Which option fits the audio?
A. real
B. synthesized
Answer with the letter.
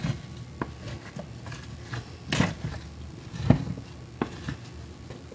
A